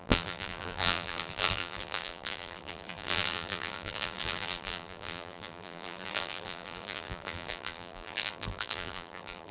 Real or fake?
fake